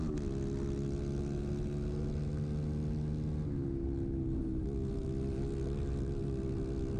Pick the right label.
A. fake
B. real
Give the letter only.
B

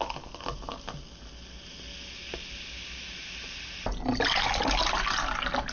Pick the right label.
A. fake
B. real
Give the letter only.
B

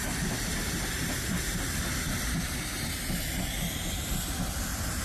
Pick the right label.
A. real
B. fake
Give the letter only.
A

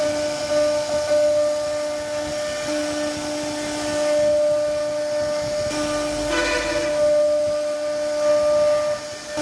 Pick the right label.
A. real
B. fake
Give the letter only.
A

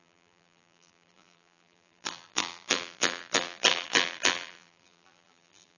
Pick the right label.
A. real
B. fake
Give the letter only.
B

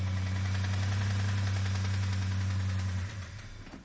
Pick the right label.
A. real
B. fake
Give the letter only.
A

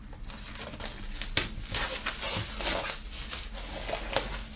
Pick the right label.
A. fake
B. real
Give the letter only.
B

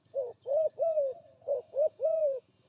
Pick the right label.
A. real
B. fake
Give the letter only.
B